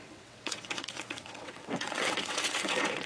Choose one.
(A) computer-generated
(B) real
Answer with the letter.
A